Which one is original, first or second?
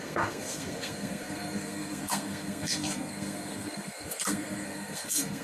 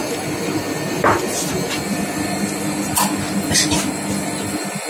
second